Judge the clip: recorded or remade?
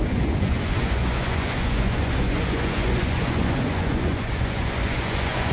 remade